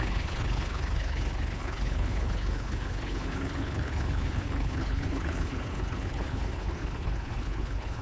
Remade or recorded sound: remade